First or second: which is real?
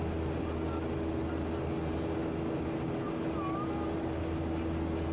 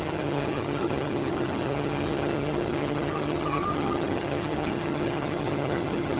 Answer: first